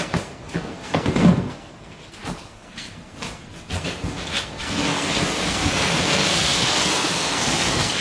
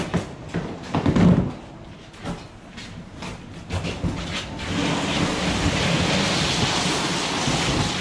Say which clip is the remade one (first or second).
first